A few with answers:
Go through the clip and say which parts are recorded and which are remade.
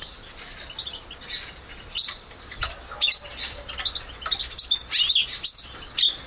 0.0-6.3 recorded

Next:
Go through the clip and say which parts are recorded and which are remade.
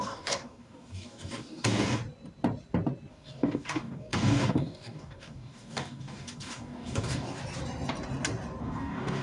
0.0-2.0 remade; 2.0-3.1 recorded; 3.1-7.4 remade; 7.4-8.6 recorded; 8.6-9.2 remade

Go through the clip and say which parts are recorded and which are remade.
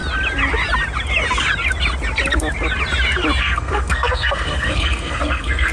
0.0-3.4 recorded; 3.4-5.7 remade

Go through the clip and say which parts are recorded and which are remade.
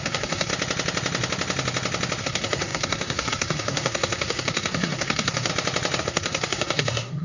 0.0-0.5 remade; 0.5-2.2 recorded; 2.2-5.5 remade; 5.5-6.0 recorded; 6.0-7.2 remade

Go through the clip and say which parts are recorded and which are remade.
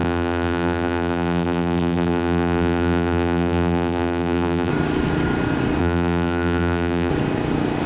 0.0-4.7 remade; 4.7-5.8 recorded; 5.8-7.1 remade; 7.1-7.9 recorded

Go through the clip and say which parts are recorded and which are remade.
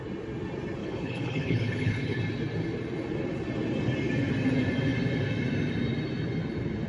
0.0-0.8 recorded; 0.8-2.2 remade; 2.2-6.9 recorded